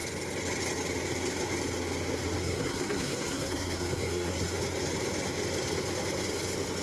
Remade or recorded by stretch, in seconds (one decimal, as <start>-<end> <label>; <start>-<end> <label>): 0.0-2.4 recorded; 2.4-4.5 remade; 4.5-6.8 recorded